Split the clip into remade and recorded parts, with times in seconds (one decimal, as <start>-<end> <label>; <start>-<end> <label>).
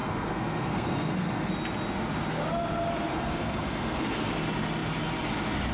0.0-1.5 remade; 1.5-3.1 recorded; 3.1-4.3 remade; 4.3-5.7 recorded